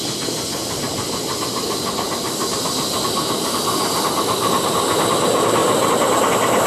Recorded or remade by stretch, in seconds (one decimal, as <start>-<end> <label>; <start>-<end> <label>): 0.0-6.7 recorded